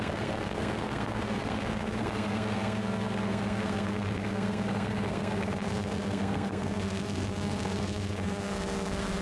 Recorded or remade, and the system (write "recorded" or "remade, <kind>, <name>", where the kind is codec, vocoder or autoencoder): remade, codec, SNAC